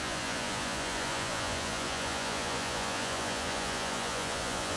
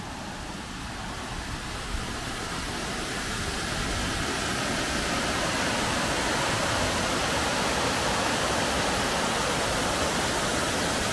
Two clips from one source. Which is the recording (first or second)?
second